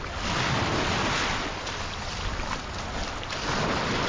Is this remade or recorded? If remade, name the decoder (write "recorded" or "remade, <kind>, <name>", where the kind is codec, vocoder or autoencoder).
recorded